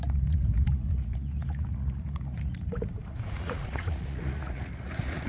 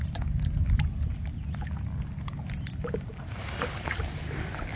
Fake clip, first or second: first